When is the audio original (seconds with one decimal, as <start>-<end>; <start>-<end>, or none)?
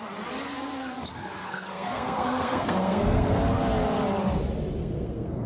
0.0-1.4; 3.4-4.8